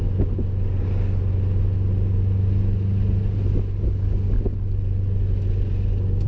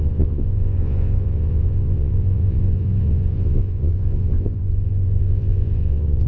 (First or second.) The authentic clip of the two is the first